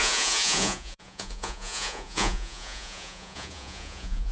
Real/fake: fake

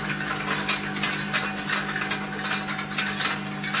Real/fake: real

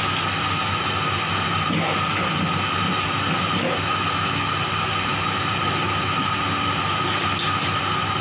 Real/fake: real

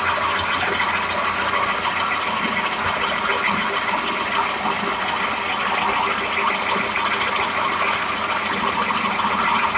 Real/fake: real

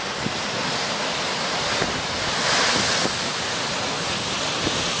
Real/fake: real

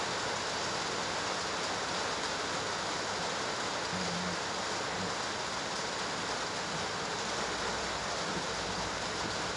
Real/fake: real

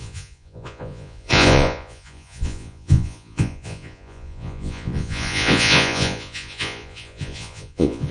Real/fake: fake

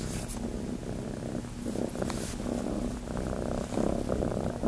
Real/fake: real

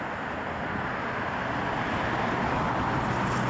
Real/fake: real